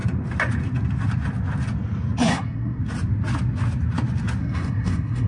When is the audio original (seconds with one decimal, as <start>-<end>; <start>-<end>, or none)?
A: 0.0-2.3; 2.8-4.4

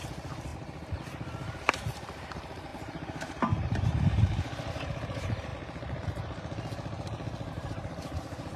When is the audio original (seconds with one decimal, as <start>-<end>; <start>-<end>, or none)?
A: 5.5-7.5

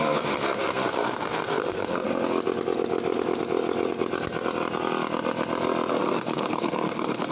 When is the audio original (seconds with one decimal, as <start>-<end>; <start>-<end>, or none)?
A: 2.1-5.9

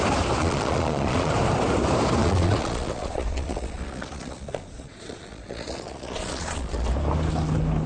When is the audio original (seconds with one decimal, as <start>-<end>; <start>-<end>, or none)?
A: 0.0-0.4; 1.3-2.2; 6.9-7.9

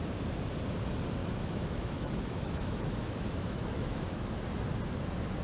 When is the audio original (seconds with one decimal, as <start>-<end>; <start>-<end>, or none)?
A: 0.0-1.2; 4.4-5.4

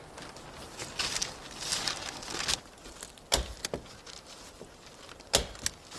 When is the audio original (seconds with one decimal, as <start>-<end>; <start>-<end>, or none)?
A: 0.0-6.0

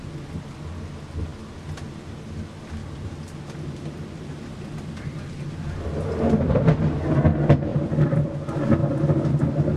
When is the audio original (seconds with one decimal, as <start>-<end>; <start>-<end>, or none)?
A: 0.0-2.8; 5.5-7.7; 8.3-9.8